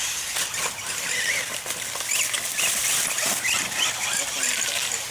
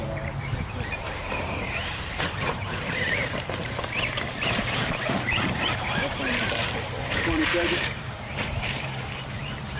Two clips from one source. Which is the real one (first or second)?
first